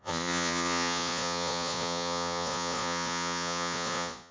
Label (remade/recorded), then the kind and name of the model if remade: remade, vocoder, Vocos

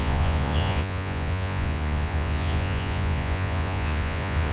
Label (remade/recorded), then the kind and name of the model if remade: remade, vocoder, Vocos